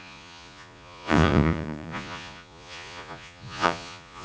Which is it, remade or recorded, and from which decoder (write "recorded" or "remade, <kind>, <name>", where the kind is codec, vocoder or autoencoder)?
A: remade, vocoder, Vocos